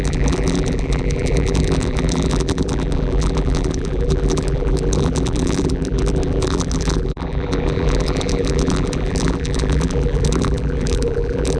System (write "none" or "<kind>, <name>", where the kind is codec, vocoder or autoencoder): vocoder, BigVGAN v2